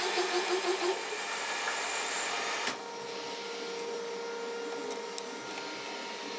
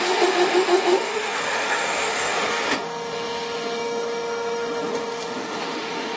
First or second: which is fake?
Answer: second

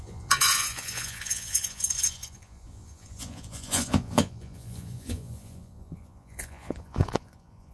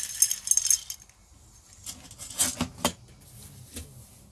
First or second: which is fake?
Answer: first